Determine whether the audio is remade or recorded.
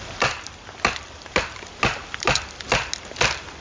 recorded